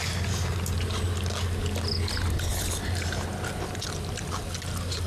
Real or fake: real